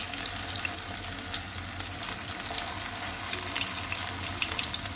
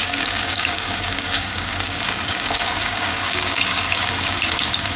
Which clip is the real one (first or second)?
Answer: first